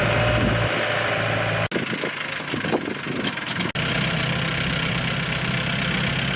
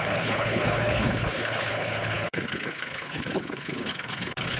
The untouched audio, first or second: first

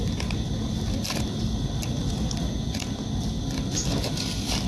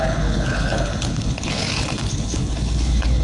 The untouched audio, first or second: first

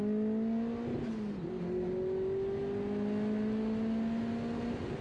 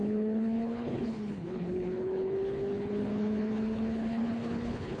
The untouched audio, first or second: first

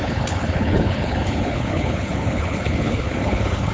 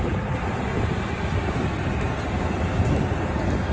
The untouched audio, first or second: second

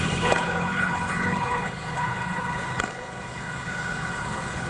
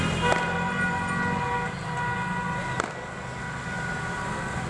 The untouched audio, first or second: second